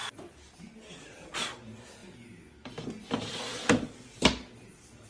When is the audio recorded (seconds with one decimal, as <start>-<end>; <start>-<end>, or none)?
0.0-5.1